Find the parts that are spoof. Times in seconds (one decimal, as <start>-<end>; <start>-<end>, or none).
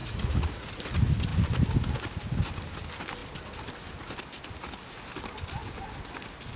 0.0-0.7